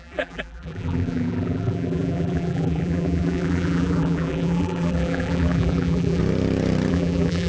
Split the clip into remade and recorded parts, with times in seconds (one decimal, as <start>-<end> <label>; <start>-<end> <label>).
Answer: 0.0-6.2 remade; 6.2-6.9 recorded; 6.9-7.5 remade